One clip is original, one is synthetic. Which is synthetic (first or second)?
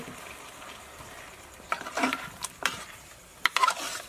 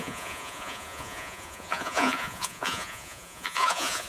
second